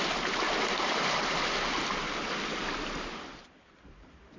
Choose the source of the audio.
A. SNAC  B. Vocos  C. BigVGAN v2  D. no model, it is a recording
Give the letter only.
D